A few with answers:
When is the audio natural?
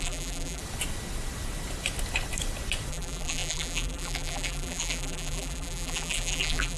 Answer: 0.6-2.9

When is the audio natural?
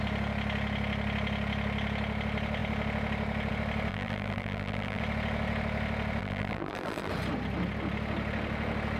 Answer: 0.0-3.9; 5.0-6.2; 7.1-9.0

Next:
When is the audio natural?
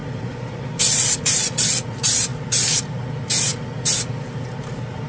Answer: 0.0-5.1